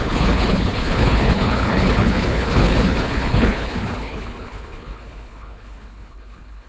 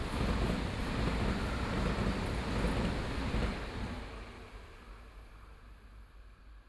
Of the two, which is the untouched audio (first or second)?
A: second